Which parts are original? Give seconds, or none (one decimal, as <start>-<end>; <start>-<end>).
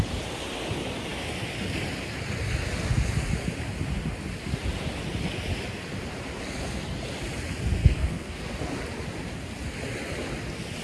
0.0-7.8; 8.6-10.8